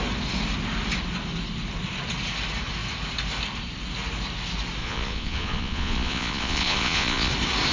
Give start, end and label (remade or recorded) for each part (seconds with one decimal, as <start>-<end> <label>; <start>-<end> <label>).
0.0-4.8 recorded; 4.8-7.3 remade; 7.3-7.7 recorded